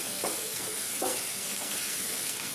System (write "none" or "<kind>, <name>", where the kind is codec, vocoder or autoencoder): codec, SNAC